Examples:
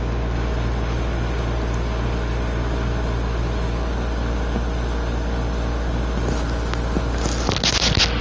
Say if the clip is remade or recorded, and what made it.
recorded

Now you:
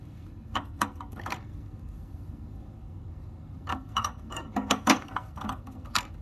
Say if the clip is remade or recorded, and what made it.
remade, codec, SNAC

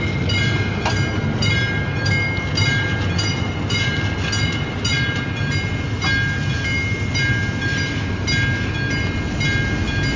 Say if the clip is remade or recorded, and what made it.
recorded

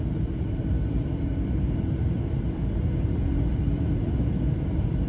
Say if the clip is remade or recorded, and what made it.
remade, vocoder, BigVGAN v2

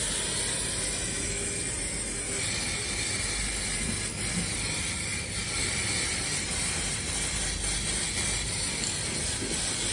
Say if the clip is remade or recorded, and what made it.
recorded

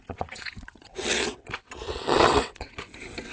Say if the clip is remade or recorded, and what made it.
remade, vocoder, WaveNeXt